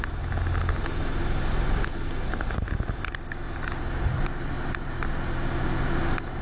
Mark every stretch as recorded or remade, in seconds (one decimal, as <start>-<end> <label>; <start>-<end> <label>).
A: 0.0-6.4 recorded